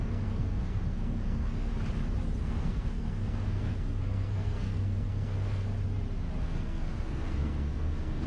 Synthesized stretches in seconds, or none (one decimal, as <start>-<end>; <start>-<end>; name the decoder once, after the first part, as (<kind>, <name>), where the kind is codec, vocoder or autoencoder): 0.0-1.7 (codec, SNAC); 2.4-5.7; 6.4-8.3